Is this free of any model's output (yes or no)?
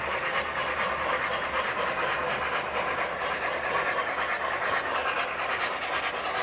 yes